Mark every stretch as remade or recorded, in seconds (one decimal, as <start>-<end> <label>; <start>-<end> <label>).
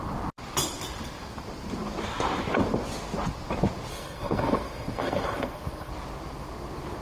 0.0-3.9 recorded; 3.9-5.9 remade; 5.9-7.0 recorded